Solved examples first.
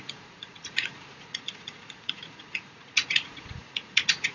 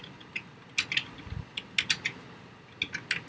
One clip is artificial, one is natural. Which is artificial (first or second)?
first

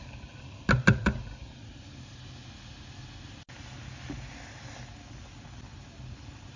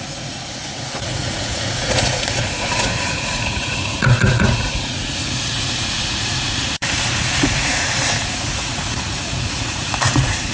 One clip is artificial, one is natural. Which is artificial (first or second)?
second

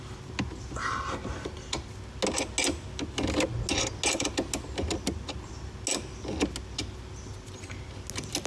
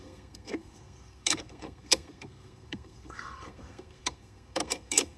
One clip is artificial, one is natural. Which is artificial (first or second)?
second